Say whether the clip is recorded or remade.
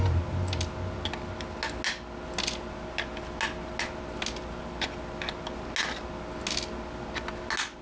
recorded